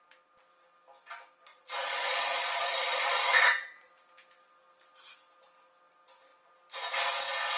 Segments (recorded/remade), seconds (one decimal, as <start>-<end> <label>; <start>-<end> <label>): 0.0-1.5 recorded; 1.5-3.9 remade; 3.9-7.6 recorded